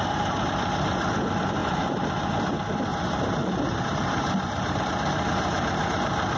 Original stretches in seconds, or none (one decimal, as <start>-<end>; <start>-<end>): 0.0-1.6; 2.3-2.9; 4.8-6.4